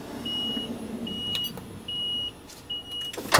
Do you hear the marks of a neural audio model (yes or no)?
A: no